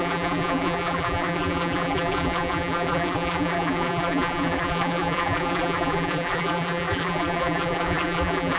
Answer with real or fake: fake